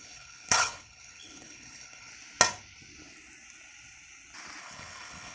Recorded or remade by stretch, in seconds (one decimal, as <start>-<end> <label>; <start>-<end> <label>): 0.0-2.1 remade; 2.1-4.6 recorded; 4.6-5.3 remade